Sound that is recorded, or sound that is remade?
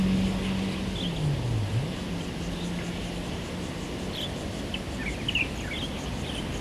recorded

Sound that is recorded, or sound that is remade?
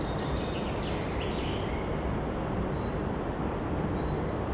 recorded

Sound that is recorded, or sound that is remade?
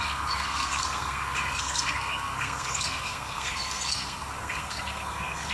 remade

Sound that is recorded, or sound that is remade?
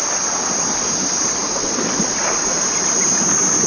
recorded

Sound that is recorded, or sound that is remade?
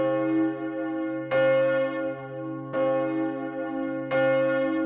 recorded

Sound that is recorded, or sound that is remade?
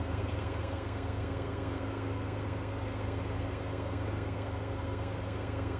remade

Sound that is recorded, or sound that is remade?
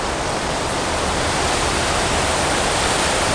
recorded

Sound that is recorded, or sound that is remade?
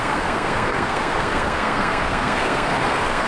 remade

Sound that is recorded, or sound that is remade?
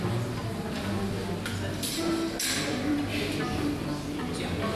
recorded